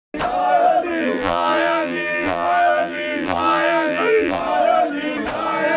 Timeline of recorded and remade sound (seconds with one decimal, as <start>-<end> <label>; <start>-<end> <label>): 0.0-0.9 recorded; 0.9-4.4 remade; 4.4-5.8 recorded